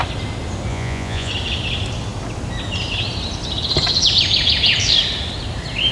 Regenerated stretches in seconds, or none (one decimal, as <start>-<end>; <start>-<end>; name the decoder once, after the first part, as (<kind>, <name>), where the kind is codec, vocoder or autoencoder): 0.7-1.3 (vocoder, Vocos)